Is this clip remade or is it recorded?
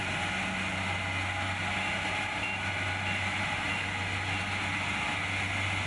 recorded